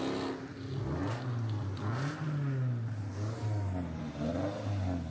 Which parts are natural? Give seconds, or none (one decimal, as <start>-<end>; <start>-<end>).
0.0-5.1